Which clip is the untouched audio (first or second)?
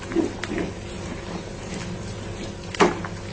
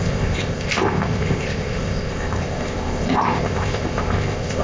first